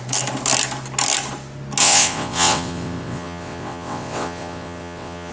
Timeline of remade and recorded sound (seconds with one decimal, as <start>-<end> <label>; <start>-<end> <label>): 0.0-1.8 recorded; 1.8-5.3 remade